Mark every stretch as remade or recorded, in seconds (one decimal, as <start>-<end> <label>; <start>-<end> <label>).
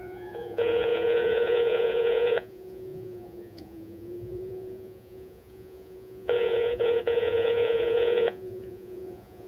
0.0-9.5 remade